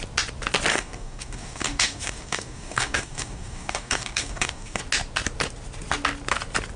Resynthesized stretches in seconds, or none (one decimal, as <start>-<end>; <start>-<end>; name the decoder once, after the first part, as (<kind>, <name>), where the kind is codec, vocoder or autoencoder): 0.7-4.8 (codec, DAC)